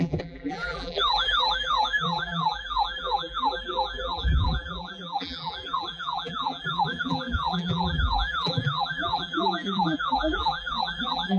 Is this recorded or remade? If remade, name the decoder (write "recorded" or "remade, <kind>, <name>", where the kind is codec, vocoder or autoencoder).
remade, vocoder, BigVGAN v2